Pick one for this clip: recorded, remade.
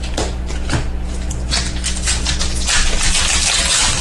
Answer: recorded